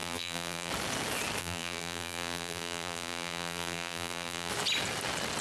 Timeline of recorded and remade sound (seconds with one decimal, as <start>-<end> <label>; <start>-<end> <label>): 0.0-0.7 remade; 0.7-1.4 recorded; 1.4-4.5 remade; 4.5-5.4 recorded